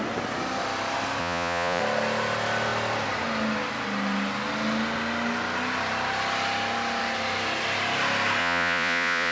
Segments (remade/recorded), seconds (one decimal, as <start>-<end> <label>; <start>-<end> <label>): 0.0-1.2 recorded; 1.2-1.8 remade; 1.8-8.4 recorded; 8.4-9.3 remade